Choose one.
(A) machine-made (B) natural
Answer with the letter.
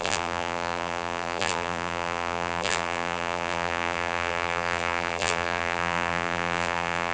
A